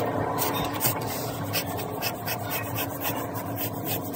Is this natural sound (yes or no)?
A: yes